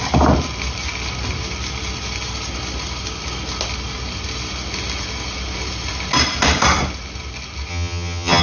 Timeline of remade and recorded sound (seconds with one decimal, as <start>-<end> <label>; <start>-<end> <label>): 0.0-7.7 recorded; 7.7-8.4 remade